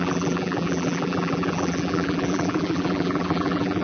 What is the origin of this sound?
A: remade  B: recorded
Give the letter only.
A